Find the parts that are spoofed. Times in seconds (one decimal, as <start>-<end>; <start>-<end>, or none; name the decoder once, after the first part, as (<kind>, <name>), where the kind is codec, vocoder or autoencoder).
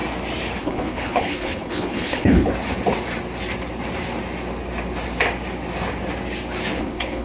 0.6-2.5 (codec, HILCodec); 6.8-7.2